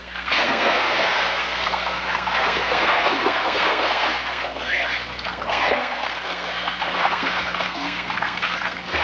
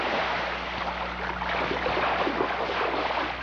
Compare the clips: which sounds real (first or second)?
second